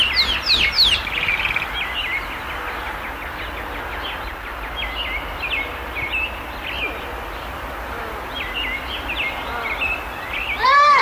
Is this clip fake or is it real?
real